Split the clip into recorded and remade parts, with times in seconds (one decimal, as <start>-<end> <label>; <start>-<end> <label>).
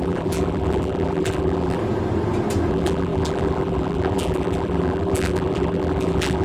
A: 0.0-1.8 remade; 1.8-2.7 recorded; 2.7-6.4 remade